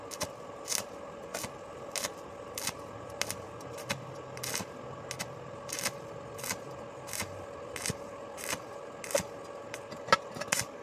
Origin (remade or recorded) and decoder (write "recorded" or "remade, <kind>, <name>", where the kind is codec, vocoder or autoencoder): recorded